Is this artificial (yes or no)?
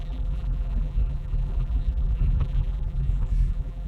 yes